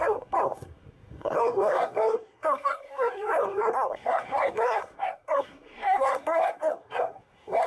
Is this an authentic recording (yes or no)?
no